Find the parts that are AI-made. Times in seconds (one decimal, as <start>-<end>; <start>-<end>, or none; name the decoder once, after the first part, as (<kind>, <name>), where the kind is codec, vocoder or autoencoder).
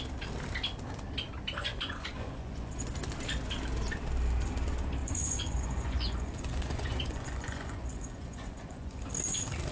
1.6-2.9 (vocoder, Vocos); 5.0-9.0